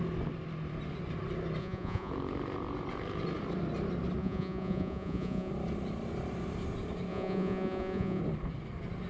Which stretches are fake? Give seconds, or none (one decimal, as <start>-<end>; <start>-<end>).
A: 1.6-2.1; 4.2-5.5; 7.1-8.2